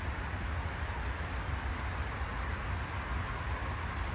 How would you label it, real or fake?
real